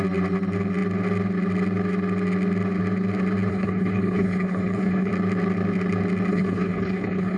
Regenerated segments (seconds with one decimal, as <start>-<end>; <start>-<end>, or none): 3.5-5.1; 6.3-7.4